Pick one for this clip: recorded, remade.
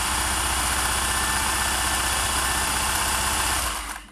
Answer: remade